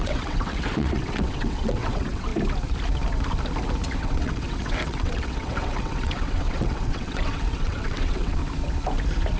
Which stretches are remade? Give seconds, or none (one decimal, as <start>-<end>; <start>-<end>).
0.0-2.3; 4.0-8.4